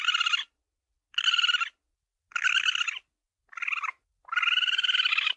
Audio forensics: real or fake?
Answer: real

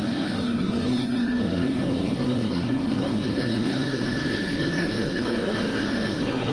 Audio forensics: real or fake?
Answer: fake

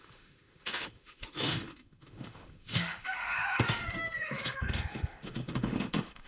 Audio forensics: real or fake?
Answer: fake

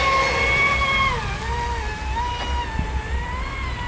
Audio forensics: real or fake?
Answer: real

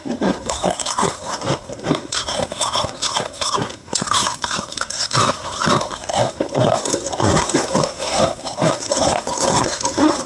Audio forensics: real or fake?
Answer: fake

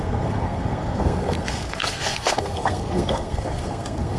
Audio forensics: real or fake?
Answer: fake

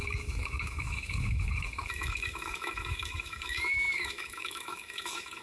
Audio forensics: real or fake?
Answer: fake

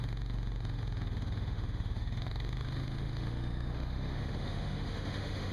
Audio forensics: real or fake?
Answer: fake